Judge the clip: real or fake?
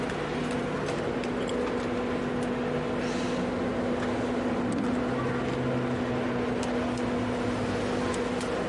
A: real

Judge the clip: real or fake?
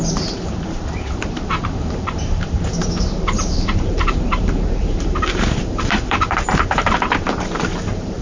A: fake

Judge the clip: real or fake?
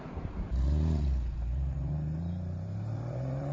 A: fake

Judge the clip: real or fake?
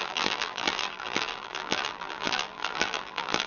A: fake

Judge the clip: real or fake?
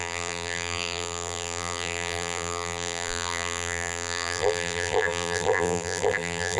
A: fake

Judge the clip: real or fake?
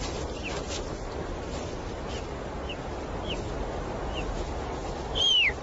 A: real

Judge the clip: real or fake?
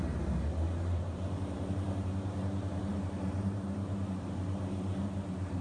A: fake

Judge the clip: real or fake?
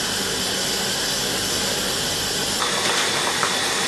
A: real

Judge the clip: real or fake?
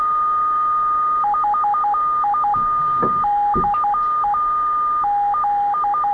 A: real